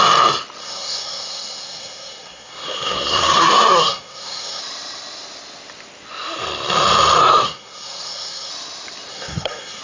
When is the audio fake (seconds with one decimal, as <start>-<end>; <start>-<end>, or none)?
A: 0.6-4.6; 7.2-8.5; 9.1-9.8